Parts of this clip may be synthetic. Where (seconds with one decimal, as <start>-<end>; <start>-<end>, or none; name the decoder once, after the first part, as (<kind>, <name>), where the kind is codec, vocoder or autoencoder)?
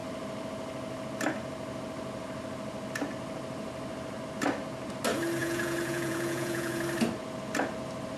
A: 5.4-6.8 (vocoder, Vocos)